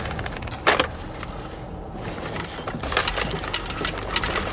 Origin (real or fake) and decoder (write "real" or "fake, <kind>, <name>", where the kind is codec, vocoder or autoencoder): real